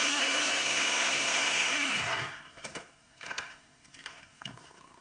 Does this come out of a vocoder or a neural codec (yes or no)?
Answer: yes